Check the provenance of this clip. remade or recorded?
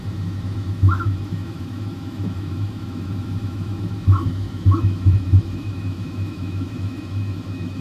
remade